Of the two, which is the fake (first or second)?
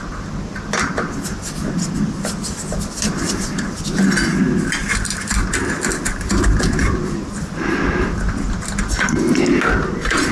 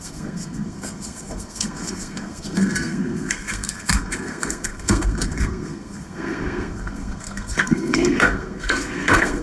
second